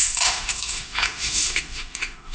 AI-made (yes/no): yes